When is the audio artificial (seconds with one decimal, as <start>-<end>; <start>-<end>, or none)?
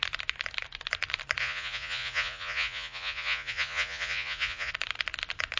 1.4-4.7